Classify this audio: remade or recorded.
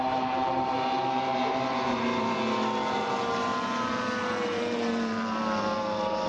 remade